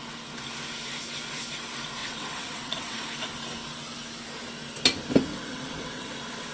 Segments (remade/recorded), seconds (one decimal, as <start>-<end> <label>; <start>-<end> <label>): 0.0-2.0 recorded; 2.0-3.0 remade; 3.0-5.3 recorded; 5.3-6.1 remade; 6.1-6.5 recorded

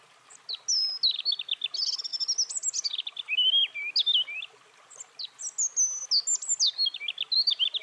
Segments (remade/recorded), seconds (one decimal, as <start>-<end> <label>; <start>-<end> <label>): 0.0-7.8 recorded

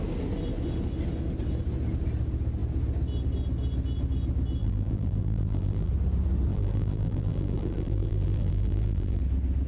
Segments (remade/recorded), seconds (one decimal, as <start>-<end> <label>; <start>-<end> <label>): 0.0-4.6 recorded; 4.6-5.9 remade; 5.9-6.5 recorded; 6.5-9.2 remade; 9.2-9.7 recorded

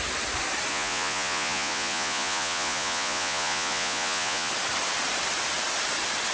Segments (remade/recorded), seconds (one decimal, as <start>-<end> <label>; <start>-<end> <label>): 0.0-0.7 recorded; 0.7-4.5 remade; 4.5-6.3 recorded

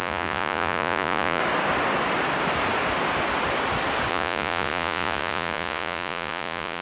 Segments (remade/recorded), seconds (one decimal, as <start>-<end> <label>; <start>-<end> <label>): 0.0-1.4 remade; 1.4-4.1 recorded; 4.1-6.8 remade

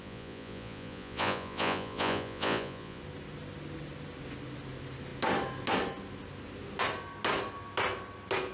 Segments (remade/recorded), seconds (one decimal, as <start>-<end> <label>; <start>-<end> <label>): 0.0-3.0 remade; 3.0-8.5 recorded

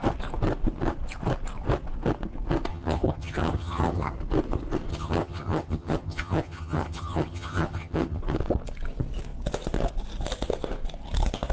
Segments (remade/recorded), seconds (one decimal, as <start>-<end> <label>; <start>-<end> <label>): 0.0-2.7 recorded; 2.7-4.1 remade; 4.1-4.9 recorded; 4.9-8.2 remade; 8.2-11.5 recorded